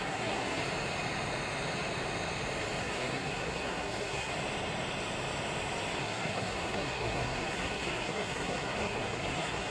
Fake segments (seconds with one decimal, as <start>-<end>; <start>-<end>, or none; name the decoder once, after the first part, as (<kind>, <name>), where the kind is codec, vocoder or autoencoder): 0.0-0.6 (codec, SNAC); 2.8-4.3; 6.0-9.7